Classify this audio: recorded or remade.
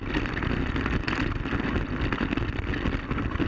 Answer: recorded